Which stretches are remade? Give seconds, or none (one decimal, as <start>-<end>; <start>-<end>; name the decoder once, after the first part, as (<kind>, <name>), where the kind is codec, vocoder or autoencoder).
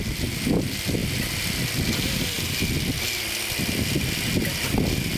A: none